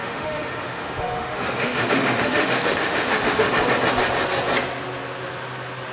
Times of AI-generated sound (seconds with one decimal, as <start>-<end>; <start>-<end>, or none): 0.0-3.5